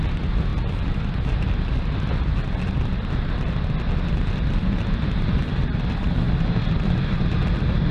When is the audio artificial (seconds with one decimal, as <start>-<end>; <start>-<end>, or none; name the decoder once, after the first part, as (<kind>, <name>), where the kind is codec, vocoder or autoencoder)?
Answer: none